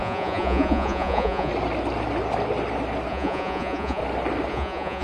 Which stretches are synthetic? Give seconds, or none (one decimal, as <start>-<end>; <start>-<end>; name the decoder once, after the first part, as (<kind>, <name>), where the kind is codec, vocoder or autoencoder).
0.0-1.5 (vocoder, Vocos); 3.1-4.0; 4.5-5.0